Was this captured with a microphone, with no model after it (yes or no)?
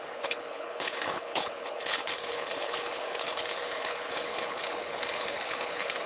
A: no